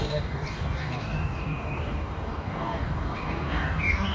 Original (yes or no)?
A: no